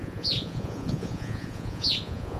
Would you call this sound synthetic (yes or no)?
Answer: yes